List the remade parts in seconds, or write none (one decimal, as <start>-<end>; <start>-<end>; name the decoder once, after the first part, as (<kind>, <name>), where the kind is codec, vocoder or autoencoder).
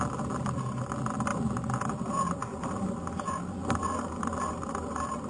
none